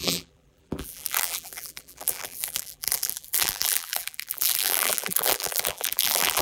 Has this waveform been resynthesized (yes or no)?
yes